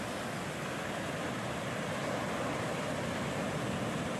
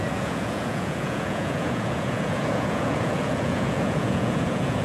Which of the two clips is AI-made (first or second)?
second